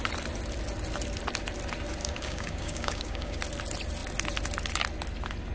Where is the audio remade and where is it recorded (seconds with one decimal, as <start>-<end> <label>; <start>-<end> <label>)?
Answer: 0.0-2.0 recorded; 2.0-3.4 remade; 3.4-5.5 recorded